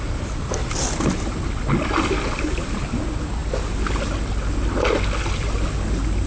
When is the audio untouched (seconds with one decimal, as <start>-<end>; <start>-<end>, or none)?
0.0-6.3